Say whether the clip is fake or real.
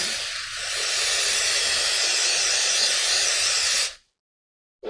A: real